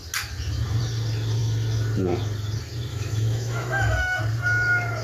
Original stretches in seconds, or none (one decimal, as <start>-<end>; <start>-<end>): 0.0-2.9; 4.2-5.0